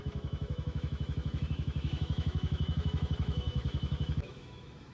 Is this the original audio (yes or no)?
no